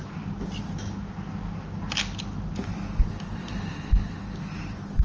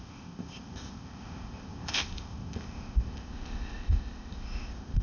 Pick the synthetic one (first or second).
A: second